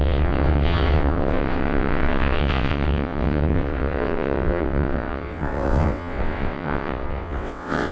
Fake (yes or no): yes